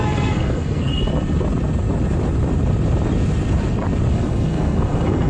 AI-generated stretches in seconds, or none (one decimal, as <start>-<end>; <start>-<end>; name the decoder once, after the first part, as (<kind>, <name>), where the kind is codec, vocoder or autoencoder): 0.0-0.9 (codec, SNAC); 4.1-5.3